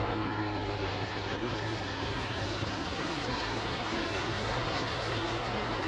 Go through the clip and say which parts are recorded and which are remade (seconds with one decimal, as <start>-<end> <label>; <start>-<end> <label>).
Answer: 0.0-5.9 remade